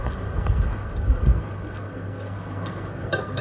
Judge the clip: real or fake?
fake